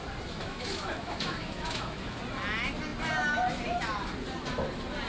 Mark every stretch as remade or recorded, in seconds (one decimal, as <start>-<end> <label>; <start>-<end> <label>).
0.0-0.4 recorded; 0.4-2.2 remade; 2.2-5.1 recorded